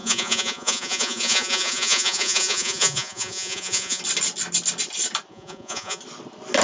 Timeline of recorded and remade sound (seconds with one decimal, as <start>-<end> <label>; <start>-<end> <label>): 0.0-4.0 remade; 4.0-5.3 recorded; 5.3-6.0 remade; 6.0-6.6 recorded